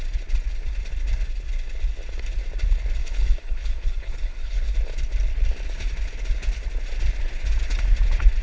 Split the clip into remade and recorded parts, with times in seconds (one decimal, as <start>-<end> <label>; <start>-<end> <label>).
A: 0.0-3.0 recorded; 3.0-4.7 remade; 4.7-8.4 recorded